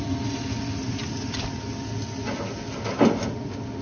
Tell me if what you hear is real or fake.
real